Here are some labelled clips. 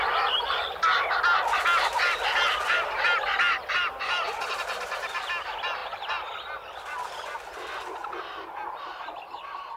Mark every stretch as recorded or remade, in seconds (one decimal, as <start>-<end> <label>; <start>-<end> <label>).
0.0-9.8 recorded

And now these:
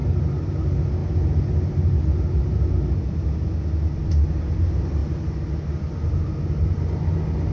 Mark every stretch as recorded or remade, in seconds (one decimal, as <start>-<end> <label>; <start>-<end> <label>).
0.0-7.5 recorded

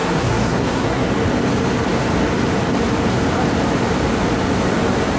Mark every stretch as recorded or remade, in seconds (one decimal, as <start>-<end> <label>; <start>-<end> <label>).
0.0-1.1 remade; 1.1-5.2 recorded